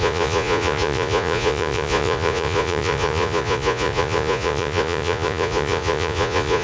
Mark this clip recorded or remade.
remade